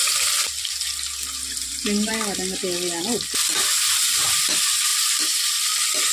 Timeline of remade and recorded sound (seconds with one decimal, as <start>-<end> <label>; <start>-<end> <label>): 0.0-0.5 remade; 0.5-1.4 recorded; 1.4-2.1 remade; 2.1-3.7 recorded; 3.7-4.4 remade; 4.4-4.9 recorded; 4.9-5.5 remade; 5.5-6.1 recorded

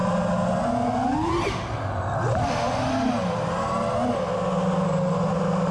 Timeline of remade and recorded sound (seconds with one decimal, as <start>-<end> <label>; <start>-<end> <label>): 0.0-5.7 recorded

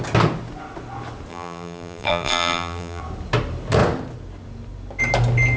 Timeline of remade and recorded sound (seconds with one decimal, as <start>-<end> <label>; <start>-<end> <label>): 0.0-1.3 recorded; 1.3-3.0 remade; 3.0-5.6 recorded

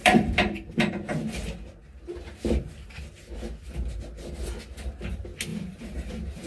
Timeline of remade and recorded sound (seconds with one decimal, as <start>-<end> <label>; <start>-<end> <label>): 0.0-0.9 remade; 0.9-5.5 recorded; 5.5-6.1 remade; 6.1-6.5 recorded